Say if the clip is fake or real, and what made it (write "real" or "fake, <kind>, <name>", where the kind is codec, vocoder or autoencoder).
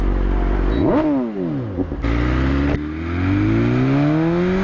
real